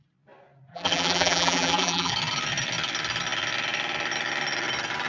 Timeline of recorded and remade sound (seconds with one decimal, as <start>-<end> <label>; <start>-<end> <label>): 0.0-0.7 recorded; 0.7-2.1 remade; 2.1-5.1 recorded